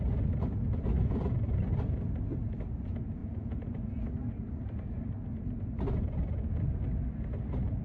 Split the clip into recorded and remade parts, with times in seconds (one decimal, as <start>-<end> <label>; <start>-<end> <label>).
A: 0.0-3.2 recorded; 3.2-4.0 remade; 4.0-7.8 recorded

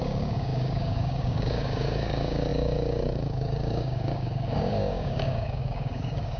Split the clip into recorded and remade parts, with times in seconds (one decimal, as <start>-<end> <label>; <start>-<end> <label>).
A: 0.0-6.4 remade

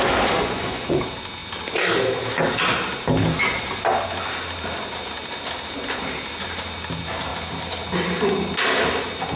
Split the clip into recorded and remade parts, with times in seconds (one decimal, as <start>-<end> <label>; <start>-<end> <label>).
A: 0.0-0.4 recorded; 0.4-1.0 remade; 1.0-9.4 recorded

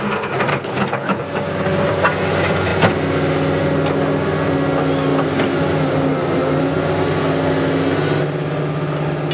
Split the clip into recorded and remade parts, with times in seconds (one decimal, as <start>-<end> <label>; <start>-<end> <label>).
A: 0.0-0.5 recorded; 0.5-1.2 remade; 1.2-9.3 recorded